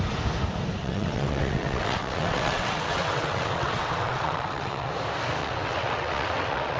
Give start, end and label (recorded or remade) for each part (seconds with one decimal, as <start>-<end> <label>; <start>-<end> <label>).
0.0-0.8 recorded; 0.8-4.9 remade; 4.9-5.4 recorded; 5.4-6.8 remade